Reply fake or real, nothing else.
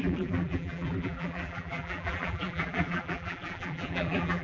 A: fake